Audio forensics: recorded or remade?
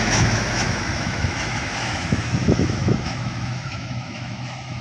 remade